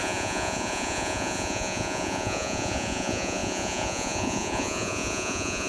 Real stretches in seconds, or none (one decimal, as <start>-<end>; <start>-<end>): none

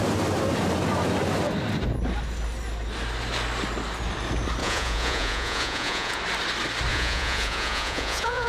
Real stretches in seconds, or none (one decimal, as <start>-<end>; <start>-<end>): 0.0-4.6; 6.2-6.9

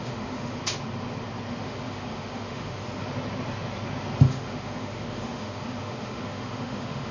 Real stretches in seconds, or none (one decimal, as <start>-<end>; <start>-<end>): 0.6-1.5; 3.0-4.2

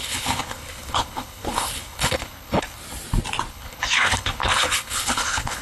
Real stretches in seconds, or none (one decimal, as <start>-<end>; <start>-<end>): 2.8-3.5

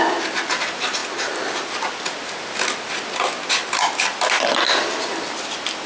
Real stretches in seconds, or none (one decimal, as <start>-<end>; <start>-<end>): 0.0-5.9

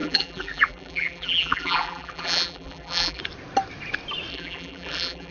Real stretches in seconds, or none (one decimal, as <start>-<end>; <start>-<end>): 3.2-4.3

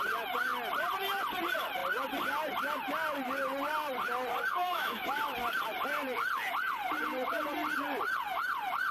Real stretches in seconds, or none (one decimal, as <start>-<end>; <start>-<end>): 0.0-4.5; 5.1-8.9